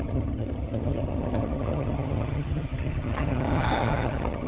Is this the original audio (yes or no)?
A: no